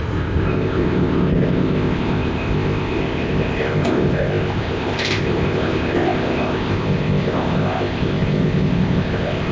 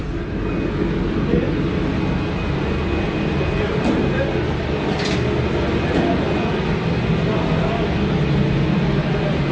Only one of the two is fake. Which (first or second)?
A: first